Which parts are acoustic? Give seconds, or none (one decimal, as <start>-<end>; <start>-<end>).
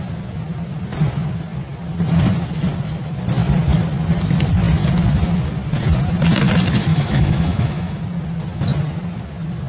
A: 0.0-6.9; 8.0-9.7